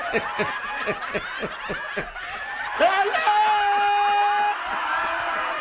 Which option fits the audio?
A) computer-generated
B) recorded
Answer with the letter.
B